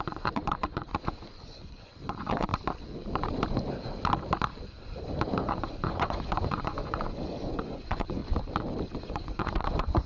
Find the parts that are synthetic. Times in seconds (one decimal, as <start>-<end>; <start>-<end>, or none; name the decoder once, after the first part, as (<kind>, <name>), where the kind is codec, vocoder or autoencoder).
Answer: 0.0-2.5 (vocoder, Vocos); 5.4-8.2; 9.0-10.1